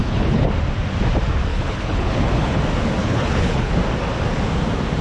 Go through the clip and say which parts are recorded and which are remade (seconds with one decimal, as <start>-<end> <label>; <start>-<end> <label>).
0.0-0.5 remade; 0.5-1.5 recorded; 1.5-2.6 remade; 2.6-3.0 recorded; 3.0-3.7 remade; 3.7-5.0 recorded